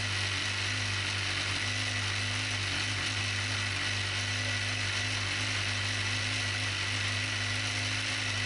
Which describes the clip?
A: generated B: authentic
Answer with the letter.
B